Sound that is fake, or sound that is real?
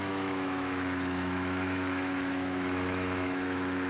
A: fake